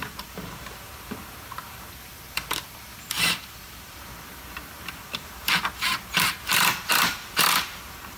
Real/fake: fake